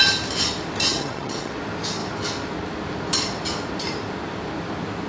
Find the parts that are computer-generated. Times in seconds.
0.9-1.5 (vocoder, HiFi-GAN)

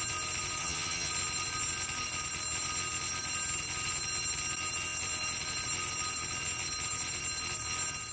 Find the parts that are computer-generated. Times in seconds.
0.6-1.1 (vocoder, HiFi-GAN)